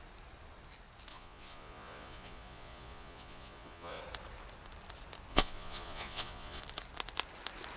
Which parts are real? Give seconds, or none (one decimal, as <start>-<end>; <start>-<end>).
0.0-1.1; 4.0-5.3; 6.6-7.8